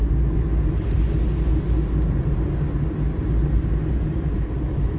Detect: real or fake real